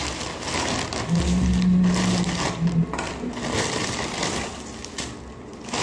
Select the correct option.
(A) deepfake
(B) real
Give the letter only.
B